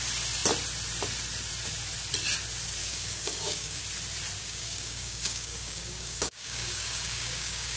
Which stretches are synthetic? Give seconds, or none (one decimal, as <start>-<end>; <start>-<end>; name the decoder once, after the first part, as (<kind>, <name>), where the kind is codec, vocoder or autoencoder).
2.8-3.8 (codec, DAC); 4.4-7.8